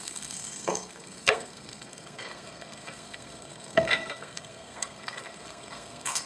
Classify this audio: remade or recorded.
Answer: remade